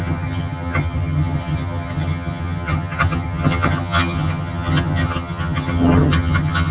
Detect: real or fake fake